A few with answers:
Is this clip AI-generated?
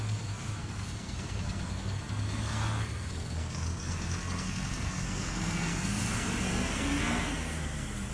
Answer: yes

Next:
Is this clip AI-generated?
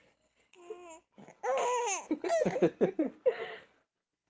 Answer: no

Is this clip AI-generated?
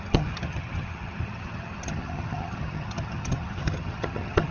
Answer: yes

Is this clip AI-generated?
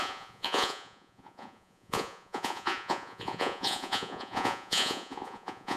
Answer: yes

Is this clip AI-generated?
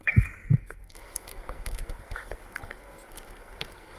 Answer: yes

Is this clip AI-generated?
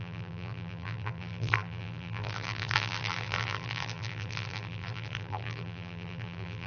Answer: yes